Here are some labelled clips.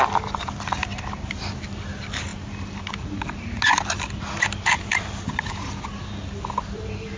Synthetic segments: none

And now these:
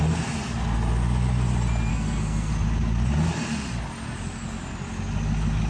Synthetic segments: 1.9-2.5 (codec, SNAC)